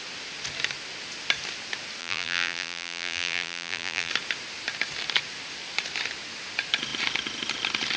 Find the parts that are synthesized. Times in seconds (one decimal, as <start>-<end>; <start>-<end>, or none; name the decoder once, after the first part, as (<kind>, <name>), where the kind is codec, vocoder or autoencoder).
2.0-4.1 (vocoder, BigVGAN v2)